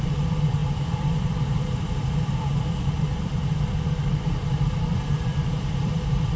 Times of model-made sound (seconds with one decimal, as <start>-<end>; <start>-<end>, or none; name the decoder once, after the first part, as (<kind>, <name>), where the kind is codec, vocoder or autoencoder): 0.0-6.4 (vocoder, BigVGAN v2)